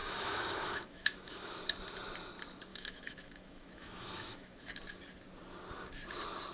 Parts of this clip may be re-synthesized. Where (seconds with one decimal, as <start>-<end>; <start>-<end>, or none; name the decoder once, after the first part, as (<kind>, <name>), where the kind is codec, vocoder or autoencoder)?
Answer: 0.0-1.6 (autoencoder, DAC-VAE); 2.7-4.7